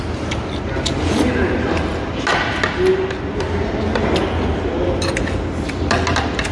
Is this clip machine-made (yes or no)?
no